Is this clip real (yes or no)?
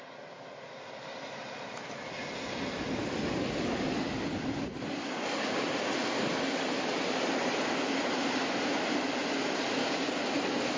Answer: yes